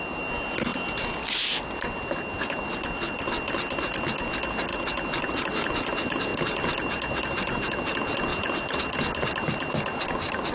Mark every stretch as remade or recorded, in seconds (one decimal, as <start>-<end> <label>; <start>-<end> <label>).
0.0-4.7 recorded; 4.7-5.5 remade; 5.5-10.5 recorded